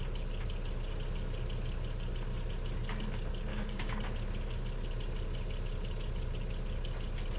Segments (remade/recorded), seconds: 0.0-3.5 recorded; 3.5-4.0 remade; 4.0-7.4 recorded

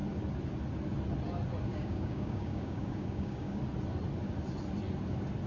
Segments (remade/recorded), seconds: 0.0-1.7 recorded; 1.7-3.6 remade; 3.6-5.5 recorded

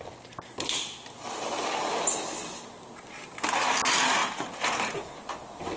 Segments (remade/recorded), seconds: 0.0-5.8 recorded

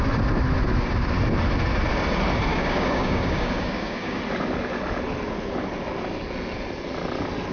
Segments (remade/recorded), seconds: 0.0-2.5 recorded; 2.5-4.2 remade; 4.2-7.5 recorded

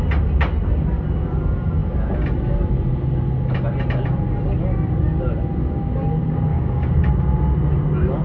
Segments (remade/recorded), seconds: 0.0-6.5 recorded; 6.5-7.1 remade; 7.1-8.2 recorded